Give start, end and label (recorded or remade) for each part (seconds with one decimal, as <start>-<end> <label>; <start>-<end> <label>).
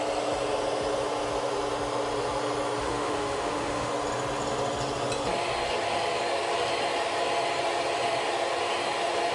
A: 0.0-2.8 recorded; 2.8-3.9 remade; 3.9-9.3 recorded